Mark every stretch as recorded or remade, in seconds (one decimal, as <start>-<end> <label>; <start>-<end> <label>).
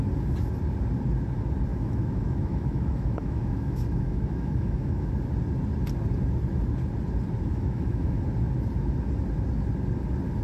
0.0-1.7 recorded; 1.7-5.1 remade; 5.1-7.5 recorded; 7.5-8.2 remade; 8.2-10.4 recorded